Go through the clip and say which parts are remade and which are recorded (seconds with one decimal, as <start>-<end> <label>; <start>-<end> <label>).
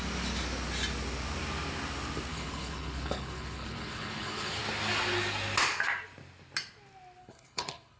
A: 0.0-2.3 recorded; 2.3-4.6 remade; 4.6-7.2 recorded; 7.2-8.0 remade